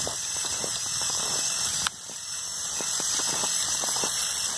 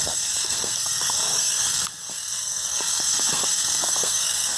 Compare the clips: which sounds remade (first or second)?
second